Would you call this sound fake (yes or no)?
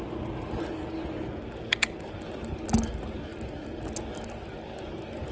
no